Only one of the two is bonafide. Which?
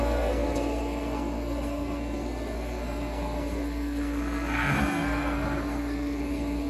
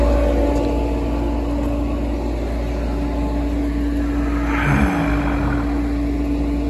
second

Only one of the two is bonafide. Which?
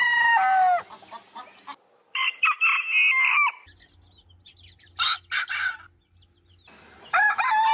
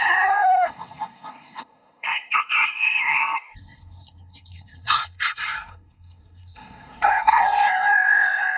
first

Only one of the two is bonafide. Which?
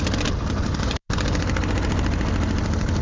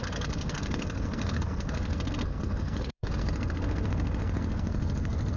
first